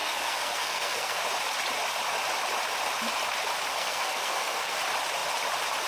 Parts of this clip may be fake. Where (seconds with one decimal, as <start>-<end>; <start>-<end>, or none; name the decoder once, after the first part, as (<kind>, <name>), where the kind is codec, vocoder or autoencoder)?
0.0-1.2 (codec, SNAC); 3.7-4.8